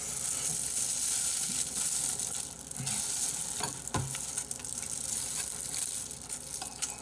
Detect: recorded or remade recorded